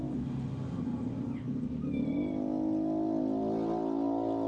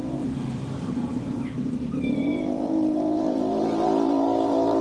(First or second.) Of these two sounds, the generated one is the second